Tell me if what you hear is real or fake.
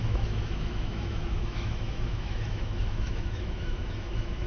fake